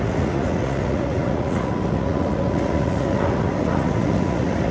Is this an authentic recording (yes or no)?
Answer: no